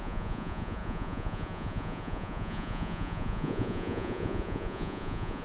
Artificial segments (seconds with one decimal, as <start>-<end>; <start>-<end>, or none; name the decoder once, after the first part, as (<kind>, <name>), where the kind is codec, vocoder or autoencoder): 0.0-5.4 (vocoder, Vocos)